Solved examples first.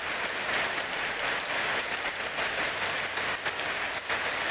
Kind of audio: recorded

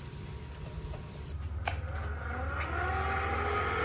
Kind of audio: recorded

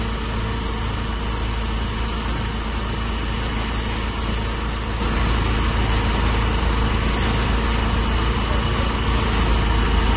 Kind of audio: recorded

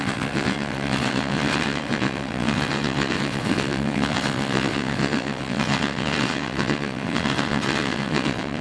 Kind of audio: remade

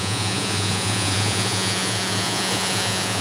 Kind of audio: remade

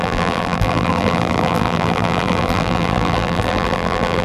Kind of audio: remade